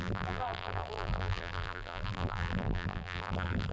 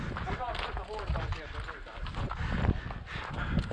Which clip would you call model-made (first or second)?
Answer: first